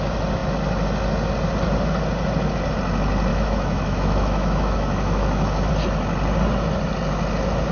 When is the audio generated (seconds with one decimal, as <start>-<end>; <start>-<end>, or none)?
3.3-5.7